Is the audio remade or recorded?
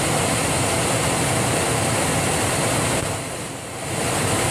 recorded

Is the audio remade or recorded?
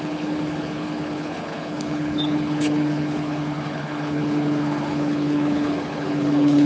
remade